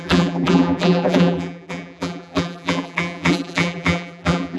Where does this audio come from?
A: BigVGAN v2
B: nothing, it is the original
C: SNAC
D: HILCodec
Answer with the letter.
A